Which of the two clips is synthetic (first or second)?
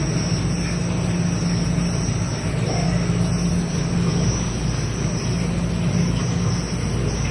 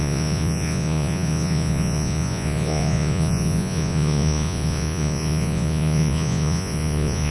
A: second